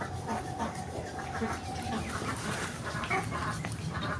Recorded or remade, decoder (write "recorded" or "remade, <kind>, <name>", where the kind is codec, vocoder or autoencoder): recorded